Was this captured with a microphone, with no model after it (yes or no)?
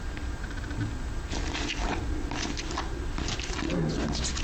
yes